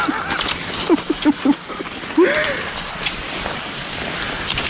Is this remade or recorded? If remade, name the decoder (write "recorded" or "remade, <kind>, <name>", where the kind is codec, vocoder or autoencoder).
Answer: recorded